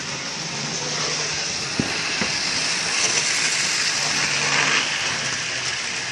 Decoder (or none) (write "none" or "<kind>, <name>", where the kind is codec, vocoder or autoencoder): none